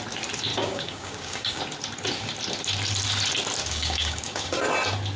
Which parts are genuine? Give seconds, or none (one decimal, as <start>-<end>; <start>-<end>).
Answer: 0.0-0.5; 1.6-3.6; 4.6-5.2

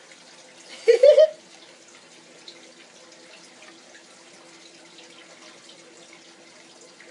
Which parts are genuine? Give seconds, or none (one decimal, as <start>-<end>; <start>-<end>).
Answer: 0.0-1.0; 2.6-7.1